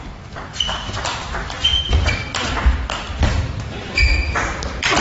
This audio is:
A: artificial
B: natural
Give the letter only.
A